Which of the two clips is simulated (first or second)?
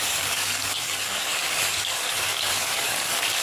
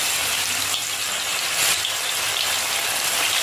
first